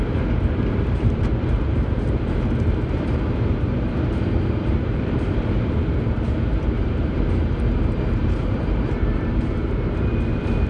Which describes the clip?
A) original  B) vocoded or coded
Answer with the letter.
B